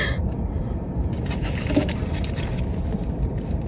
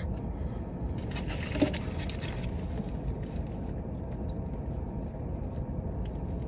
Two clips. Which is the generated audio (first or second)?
first